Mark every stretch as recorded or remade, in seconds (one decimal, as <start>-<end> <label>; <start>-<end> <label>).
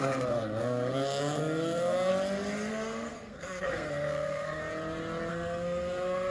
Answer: 0.0-2.1 remade; 2.1-2.7 recorded; 2.7-4.6 remade; 4.6-5.3 recorded; 5.3-6.3 remade